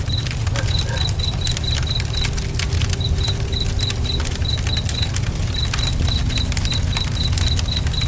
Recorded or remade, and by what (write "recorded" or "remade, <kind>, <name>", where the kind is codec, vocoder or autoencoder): recorded